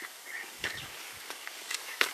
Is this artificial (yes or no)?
yes